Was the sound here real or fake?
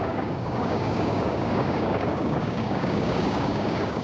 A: fake